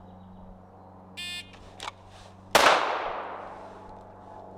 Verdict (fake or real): real